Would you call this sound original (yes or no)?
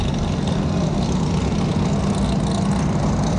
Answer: yes